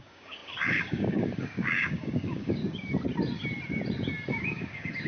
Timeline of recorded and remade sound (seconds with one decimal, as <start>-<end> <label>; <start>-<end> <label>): 0.0-2.6 remade; 2.6-4.3 recorded; 4.3-5.1 remade